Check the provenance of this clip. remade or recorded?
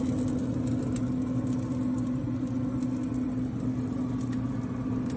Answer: recorded